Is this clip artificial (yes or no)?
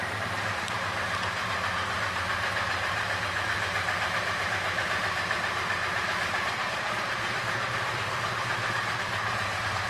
yes